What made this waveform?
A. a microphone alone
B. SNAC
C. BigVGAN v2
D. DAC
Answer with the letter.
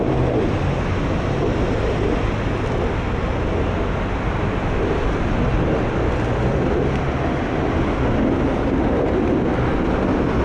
A